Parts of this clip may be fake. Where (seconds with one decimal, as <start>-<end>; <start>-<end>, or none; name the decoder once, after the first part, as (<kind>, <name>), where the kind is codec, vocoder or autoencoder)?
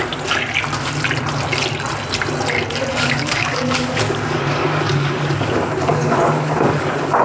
2.9-7.2 (codec, DAC)